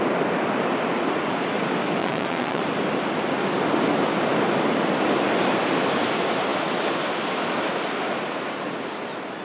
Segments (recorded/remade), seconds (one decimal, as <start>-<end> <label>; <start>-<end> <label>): 0.0-2.0 recorded; 2.0-2.6 remade; 2.6-9.4 recorded